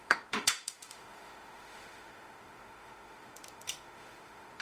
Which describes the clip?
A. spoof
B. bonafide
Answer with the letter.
A